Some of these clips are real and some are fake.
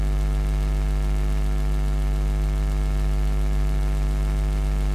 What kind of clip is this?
fake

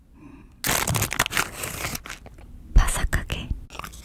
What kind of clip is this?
real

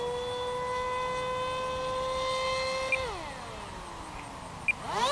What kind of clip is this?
real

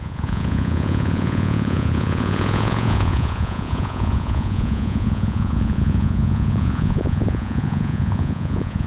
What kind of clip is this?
fake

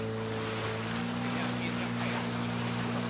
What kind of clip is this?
real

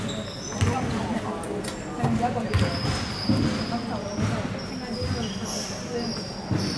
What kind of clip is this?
real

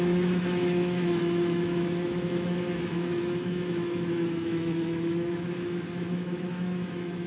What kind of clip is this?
fake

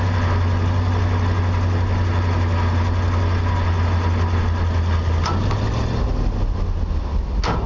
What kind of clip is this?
real